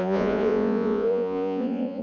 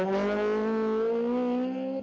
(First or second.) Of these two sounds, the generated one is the first